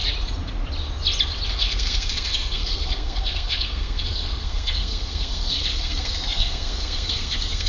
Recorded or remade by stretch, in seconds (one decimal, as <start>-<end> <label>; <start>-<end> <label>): 0.0-1.5 recorded; 1.5-7.7 remade